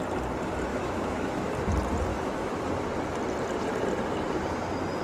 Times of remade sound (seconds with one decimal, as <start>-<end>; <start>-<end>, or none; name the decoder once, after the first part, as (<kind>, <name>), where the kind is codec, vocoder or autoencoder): 0.7-1.5 (autoencoder, DAC-VAE); 2.1-2.7